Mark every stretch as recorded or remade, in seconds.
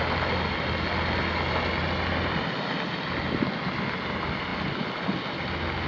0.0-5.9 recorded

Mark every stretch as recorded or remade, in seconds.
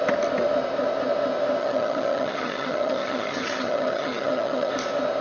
0.0-1.6 recorded; 1.6-4.7 remade; 4.7-5.2 recorded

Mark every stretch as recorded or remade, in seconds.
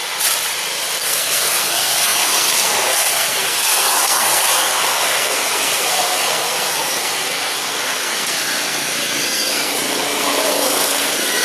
0.0-1.0 recorded; 1.0-11.4 remade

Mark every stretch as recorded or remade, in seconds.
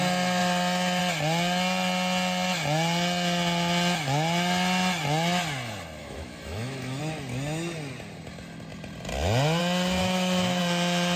0.0-6.0 recorded; 6.0-7.0 remade; 7.0-10.0 recorded; 10.0-10.6 remade; 10.6-11.2 recorded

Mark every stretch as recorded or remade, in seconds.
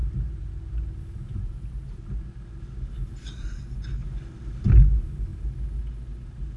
0.0-6.6 recorded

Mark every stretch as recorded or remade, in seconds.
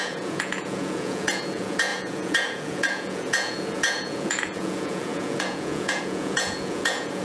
0.0-7.2 remade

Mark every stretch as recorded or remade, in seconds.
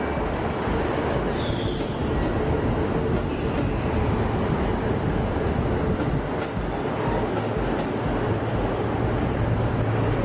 0.0-10.2 recorded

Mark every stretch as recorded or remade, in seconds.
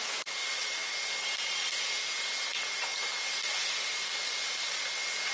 0.0-0.4 recorded; 0.4-0.9 remade; 0.9-5.3 recorded